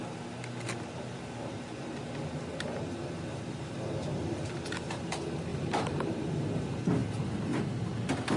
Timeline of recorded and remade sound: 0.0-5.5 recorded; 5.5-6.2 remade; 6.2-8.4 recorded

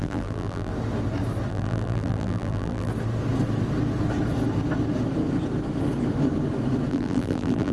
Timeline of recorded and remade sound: 0.0-0.7 remade; 0.7-1.5 recorded; 1.5-2.9 remade; 2.9-6.9 recorded; 6.9-7.7 remade

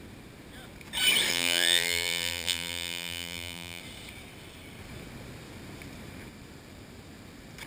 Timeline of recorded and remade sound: 0.0-1.3 recorded; 1.3-3.8 remade; 3.8-7.7 recorded

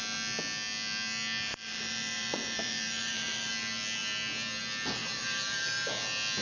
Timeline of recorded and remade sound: 0.0-1.5 recorded; 1.5-3.5 remade; 3.5-5.0 recorded; 5.0-5.9 remade; 5.9-6.4 recorded

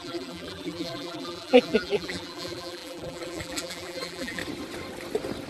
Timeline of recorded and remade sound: 0.0-4.4 remade; 4.4-5.5 recorded

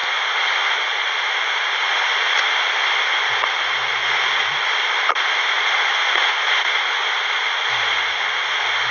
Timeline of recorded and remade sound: 0.0-0.6 remade; 0.6-4.4 recorded; 4.4-5.9 remade; 5.9-8.9 recorded

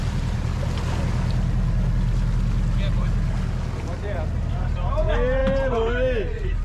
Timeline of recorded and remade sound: 0.0-0.5 remade; 0.5-4.5 recorded; 4.5-6.6 remade

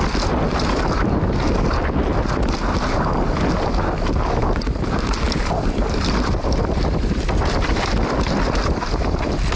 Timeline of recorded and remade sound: 0.0-4.4 recorded; 4.4-7.9 remade; 7.9-9.6 recorded